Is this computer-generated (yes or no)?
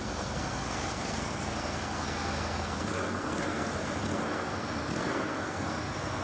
yes